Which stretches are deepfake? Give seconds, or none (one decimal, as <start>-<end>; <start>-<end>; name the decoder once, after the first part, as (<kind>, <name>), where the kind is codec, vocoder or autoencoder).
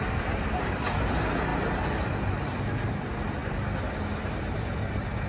none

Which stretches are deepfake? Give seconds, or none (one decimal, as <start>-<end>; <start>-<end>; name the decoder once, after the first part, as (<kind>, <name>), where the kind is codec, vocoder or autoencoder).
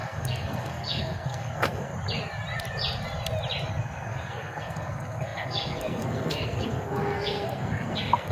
0.0-1.9 (codec, SNAC); 3.7-8.3